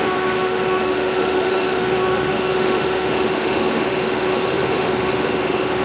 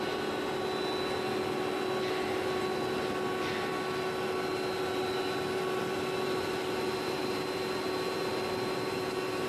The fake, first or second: first